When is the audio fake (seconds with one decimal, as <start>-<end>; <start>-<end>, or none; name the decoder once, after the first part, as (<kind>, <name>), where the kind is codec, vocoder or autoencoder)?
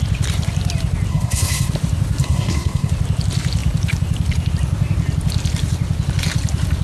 1.1-1.7 (codec, SNAC); 2.2-2.9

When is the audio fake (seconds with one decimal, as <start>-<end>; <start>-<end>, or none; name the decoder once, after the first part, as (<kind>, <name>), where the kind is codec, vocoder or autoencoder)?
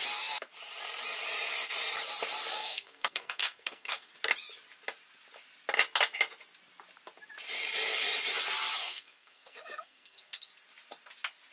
2.5-4.1 (codec, SNAC); 8.8-10.5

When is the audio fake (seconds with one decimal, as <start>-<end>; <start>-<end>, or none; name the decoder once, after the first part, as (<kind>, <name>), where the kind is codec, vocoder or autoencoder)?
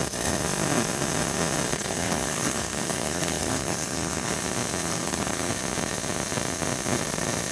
1.7-4.3 (codec, SNAC); 4.9-5.5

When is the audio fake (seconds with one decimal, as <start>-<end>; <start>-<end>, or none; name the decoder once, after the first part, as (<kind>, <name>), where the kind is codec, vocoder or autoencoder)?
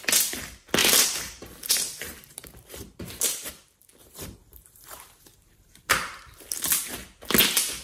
0.8-3.5 (vocoder, BigVGAN v2); 4.0-5.9